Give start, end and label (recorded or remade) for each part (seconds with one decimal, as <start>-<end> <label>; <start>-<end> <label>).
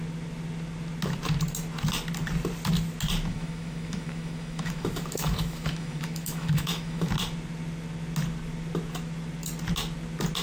0.0-3.3 recorded; 3.3-7.1 remade; 7.1-10.4 recorded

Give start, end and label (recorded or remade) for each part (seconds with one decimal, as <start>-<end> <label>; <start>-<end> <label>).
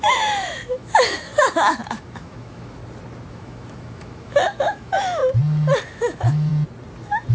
0.0-2.8 remade; 2.8-3.3 recorded; 3.3-5.2 remade; 5.2-5.9 recorded; 5.9-6.5 remade; 6.5-7.3 recorded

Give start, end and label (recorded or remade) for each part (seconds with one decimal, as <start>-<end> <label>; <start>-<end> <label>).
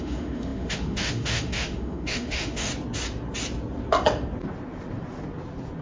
0.0-2.7 remade; 2.7-5.8 recorded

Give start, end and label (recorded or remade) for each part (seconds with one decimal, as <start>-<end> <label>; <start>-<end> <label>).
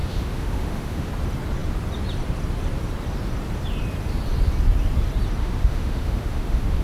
0.0-1.1 remade; 1.1-5.4 recorded; 5.4-6.8 remade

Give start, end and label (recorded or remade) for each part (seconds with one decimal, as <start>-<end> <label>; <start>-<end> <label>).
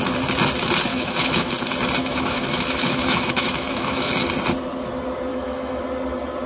0.0-0.9 recorded; 0.9-1.5 remade; 1.5-2.0 recorded; 2.0-4.1 remade; 4.1-5.3 recorded; 5.3-5.8 remade; 5.8-6.5 recorded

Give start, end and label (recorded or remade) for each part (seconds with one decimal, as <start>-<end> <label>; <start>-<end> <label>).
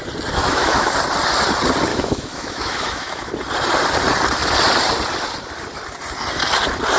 0.0-0.4 recorded; 0.4-0.9 remade; 0.9-1.9 recorded; 1.9-3.3 remade; 3.3-7.0 recorded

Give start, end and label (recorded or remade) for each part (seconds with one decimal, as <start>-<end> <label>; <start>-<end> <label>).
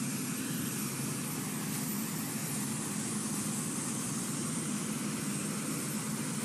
0.0-6.4 recorded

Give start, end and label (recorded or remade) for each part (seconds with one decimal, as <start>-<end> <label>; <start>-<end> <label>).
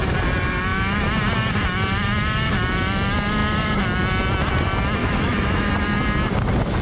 0.0-5.0 recorded; 5.0-5.7 remade; 5.7-6.8 recorded